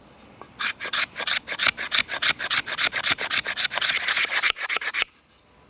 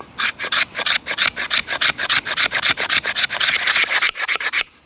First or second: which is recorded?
first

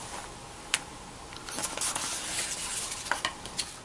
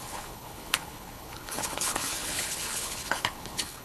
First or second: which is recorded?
first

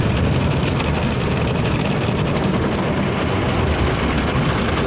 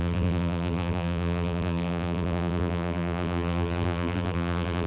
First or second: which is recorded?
first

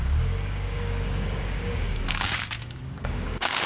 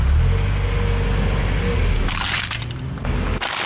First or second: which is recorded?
second